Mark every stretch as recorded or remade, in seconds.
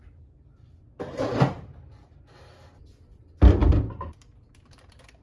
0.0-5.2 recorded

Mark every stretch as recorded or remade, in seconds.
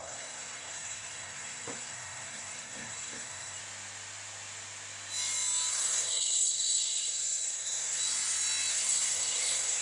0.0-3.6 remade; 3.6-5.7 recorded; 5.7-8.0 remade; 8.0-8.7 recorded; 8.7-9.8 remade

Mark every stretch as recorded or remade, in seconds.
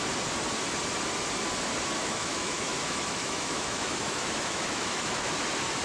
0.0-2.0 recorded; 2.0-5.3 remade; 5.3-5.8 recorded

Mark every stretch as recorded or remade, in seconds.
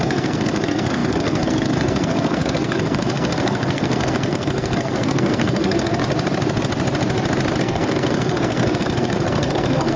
0.0-6.0 remade; 6.0-7.6 recorded; 7.6-10.0 remade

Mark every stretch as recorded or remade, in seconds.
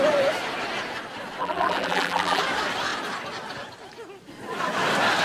0.0-1.4 recorded; 1.4-2.4 remade; 2.4-5.2 recorded